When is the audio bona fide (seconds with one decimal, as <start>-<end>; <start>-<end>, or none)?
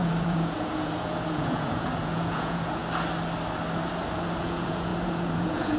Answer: 2.8-4.4